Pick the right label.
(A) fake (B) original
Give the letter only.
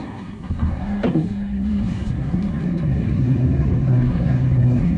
A